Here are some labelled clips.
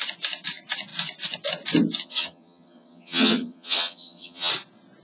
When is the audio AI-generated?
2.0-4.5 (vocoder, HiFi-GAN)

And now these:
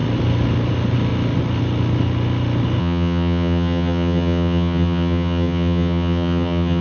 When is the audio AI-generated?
2.8-6.8 (vocoder, HiFi-GAN)

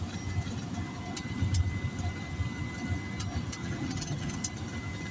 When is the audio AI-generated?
3.6-4.4 (vocoder, HiFi-GAN)